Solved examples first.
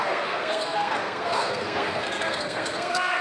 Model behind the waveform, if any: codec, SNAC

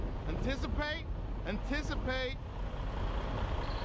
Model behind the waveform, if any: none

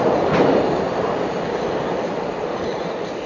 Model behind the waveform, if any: none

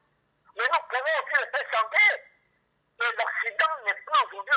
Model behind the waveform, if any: none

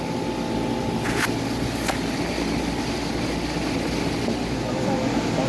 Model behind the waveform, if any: none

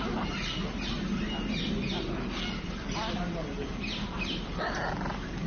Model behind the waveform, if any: none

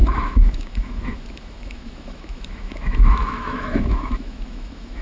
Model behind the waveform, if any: autoencoder, DAC-VAE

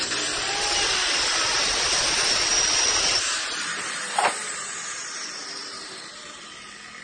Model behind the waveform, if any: none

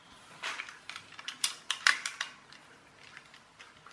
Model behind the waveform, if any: none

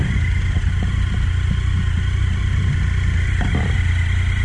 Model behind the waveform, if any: none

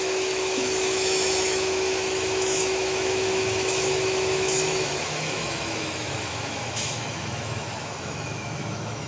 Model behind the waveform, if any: autoencoder, DAC-VAE